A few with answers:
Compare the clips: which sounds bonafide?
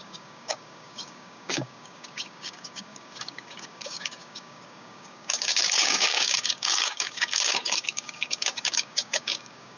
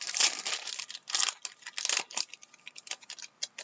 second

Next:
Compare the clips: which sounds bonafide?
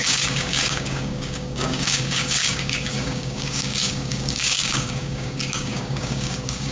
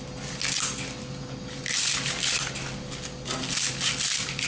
second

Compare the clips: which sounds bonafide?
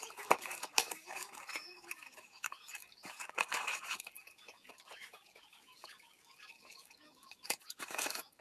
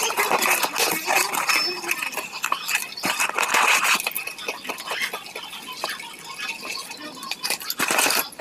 second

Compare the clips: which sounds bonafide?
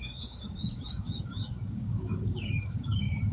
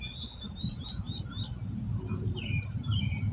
second